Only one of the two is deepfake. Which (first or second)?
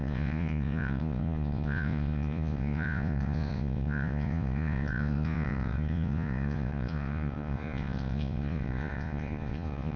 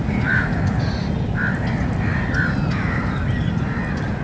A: first